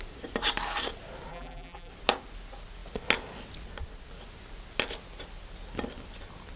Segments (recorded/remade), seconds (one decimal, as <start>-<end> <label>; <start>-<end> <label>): 0.0-1.3 recorded; 1.3-1.9 remade; 1.9-6.6 recorded